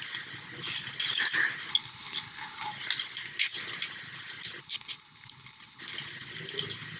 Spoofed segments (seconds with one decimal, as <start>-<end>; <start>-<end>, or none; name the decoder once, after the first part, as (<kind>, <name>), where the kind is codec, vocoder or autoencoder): 1.7-2.7 (codec, HILCodec); 4.6-5.8